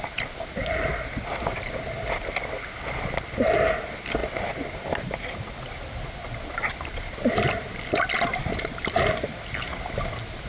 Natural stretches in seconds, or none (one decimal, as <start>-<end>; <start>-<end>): 0.0-10.5